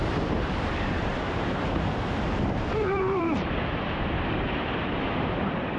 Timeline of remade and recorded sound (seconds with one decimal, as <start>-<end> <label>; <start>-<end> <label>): 0.0-5.8 remade